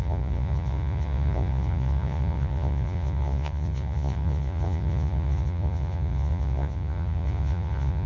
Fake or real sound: fake